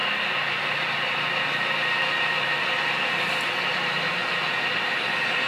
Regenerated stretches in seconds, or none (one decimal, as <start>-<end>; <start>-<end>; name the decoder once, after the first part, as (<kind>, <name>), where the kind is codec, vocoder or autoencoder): 0.0-3.3 (vocoder, BigVGAN v2)